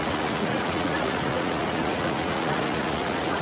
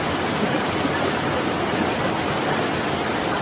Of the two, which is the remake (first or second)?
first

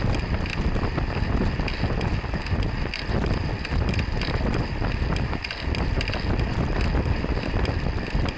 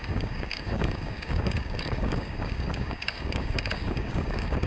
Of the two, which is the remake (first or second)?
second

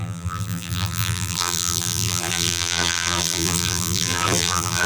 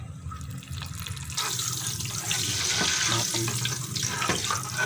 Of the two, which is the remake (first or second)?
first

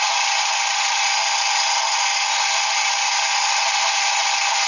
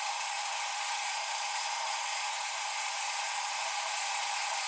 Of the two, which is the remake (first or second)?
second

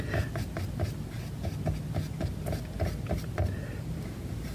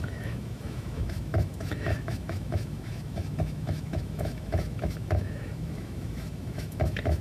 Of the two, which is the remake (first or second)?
second